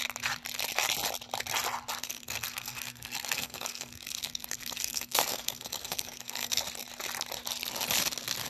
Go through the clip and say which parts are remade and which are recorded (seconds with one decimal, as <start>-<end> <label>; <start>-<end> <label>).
0.0-2.0 recorded; 2.0-6.6 remade; 6.6-8.5 recorded